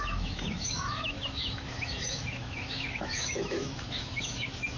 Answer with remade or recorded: remade